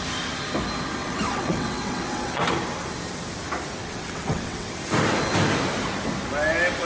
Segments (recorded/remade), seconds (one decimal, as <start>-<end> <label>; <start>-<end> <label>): 0.0-1.0 recorded; 1.0-2.4 remade; 2.4-3.8 recorded; 3.8-4.7 remade; 4.7-6.8 recorded